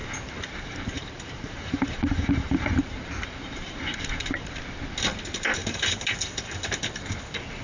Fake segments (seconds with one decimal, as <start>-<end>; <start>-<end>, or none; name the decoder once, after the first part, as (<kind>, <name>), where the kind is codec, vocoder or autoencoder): 0.0-4.6 (vocoder, BigVGAN v2); 5.6-6.2